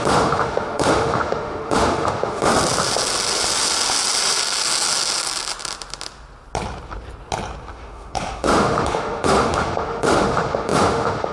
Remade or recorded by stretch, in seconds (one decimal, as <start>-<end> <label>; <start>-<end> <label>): 0.0-2.5 remade; 2.5-7.7 recorded; 7.7-11.3 remade